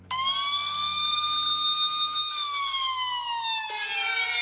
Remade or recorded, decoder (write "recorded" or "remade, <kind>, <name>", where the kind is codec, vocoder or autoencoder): recorded